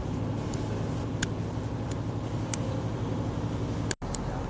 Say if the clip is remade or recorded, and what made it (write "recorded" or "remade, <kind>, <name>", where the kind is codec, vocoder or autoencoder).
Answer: recorded